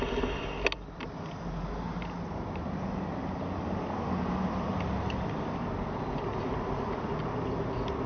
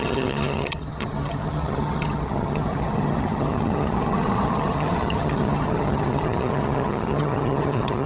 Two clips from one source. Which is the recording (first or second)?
first